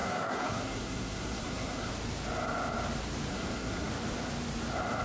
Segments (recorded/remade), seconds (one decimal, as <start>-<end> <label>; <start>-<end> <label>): 0.0-1.9 remade; 1.9-3.3 recorded; 3.3-3.9 remade; 3.9-5.0 recorded